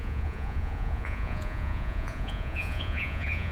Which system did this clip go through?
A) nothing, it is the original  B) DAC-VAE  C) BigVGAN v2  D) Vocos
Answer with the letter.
D